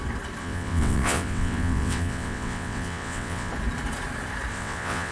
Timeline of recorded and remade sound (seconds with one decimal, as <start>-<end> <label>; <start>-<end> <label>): 0.0-0.4 recorded; 0.4-3.5 remade; 3.5-4.5 recorded; 4.5-5.1 remade